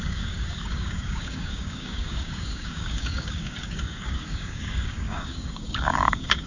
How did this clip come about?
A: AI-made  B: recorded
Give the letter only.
A